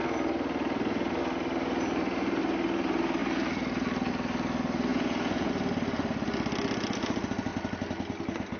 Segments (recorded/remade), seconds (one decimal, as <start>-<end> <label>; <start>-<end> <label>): 0.0-4.9 recorded; 4.9-5.5 remade; 5.5-8.6 recorded